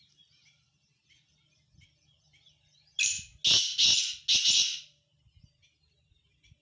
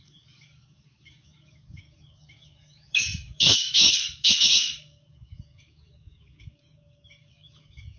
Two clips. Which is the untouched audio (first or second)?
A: first